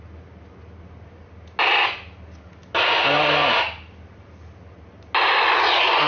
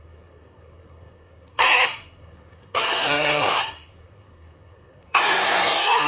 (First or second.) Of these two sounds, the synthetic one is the second